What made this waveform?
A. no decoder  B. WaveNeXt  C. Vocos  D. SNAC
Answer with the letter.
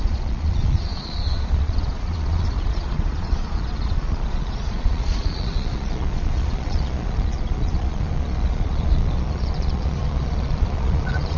C